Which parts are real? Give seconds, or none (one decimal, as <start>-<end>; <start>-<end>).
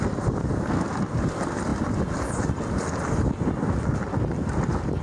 0.0-5.0